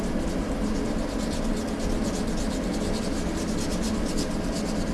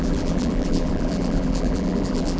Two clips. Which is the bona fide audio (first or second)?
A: first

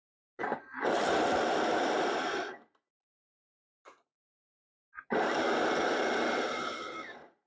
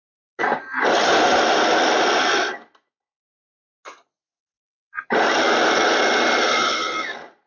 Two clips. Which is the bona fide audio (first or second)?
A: second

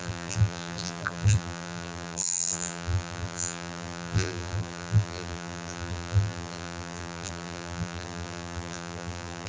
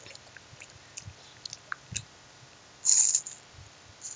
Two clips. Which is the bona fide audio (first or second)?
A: second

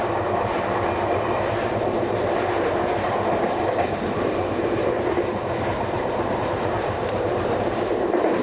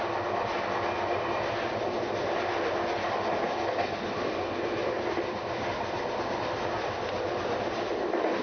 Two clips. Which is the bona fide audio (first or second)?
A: second